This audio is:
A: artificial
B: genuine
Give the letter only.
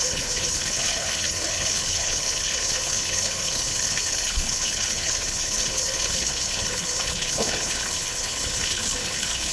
A